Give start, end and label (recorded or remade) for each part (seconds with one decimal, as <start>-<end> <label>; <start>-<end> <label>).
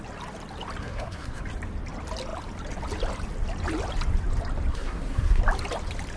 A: 0.0-0.8 recorded; 0.8-1.4 remade; 1.4-4.7 recorded; 4.7-5.4 remade; 5.4-6.2 recorded